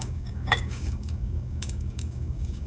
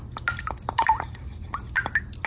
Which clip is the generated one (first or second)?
first